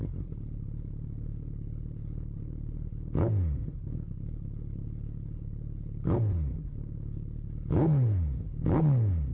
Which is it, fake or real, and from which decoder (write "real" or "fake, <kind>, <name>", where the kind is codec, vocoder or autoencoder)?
fake, codec, HILCodec